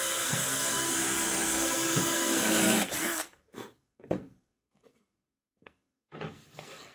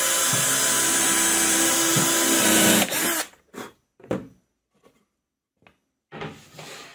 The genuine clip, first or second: second